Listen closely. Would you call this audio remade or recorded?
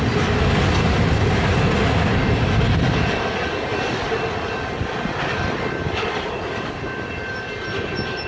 recorded